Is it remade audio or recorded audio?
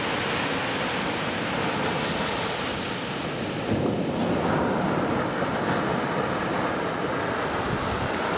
recorded